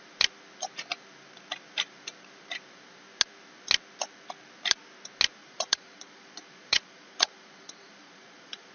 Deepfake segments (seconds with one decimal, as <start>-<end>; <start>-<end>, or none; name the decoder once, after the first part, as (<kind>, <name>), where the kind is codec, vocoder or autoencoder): 5.4-8.7 (vocoder, Vocos)